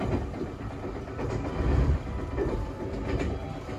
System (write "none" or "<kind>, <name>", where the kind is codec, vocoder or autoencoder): vocoder, BigVGAN v2